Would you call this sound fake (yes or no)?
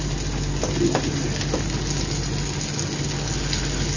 no